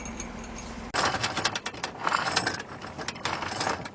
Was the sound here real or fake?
real